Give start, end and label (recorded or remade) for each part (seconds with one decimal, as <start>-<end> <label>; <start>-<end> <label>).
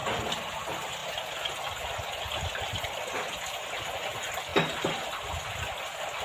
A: 0.0-6.2 recorded